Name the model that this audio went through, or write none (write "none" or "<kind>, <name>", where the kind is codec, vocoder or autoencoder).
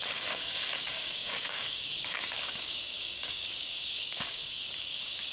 codec, DAC